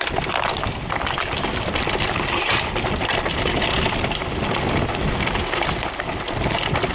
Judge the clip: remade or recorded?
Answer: recorded